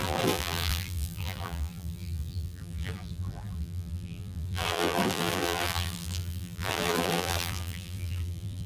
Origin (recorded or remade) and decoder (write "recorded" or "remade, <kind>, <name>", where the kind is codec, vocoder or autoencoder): remade, vocoder, BigVGAN v2